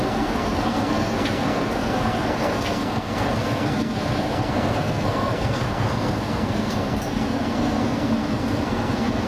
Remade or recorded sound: remade